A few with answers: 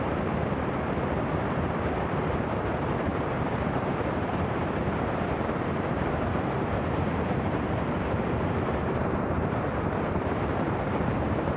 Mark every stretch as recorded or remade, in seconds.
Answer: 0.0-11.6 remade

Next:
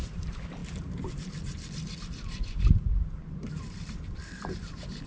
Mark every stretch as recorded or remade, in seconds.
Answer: 0.0-0.6 remade; 0.6-3.5 recorded; 3.5-5.1 remade

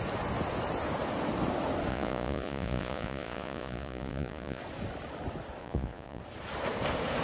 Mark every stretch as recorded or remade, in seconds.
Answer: 0.0-1.9 recorded; 1.9-4.6 remade; 4.6-5.6 recorded; 5.6-6.2 remade; 6.2-7.2 recorded

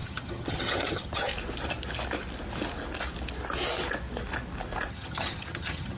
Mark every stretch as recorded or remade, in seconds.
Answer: 0.0-1.3 remade; 1.3-4.9 recorded; 4.9-6.0 remade

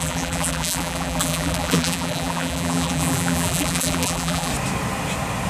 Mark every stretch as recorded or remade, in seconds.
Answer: 0.0-4.5 remade; 4.5-5.5 recorded

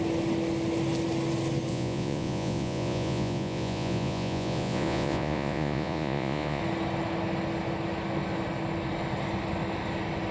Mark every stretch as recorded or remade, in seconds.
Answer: 0.0-1.7 recorded; 1.7-6.6 remade; 6.6-10.3 recorded